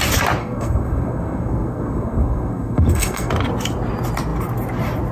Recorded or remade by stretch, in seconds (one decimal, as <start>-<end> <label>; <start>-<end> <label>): 0.0-0.4 recorded; 0.4-3.3 remade; 3.3-5.1 recorded